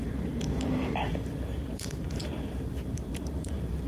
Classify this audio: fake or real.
fake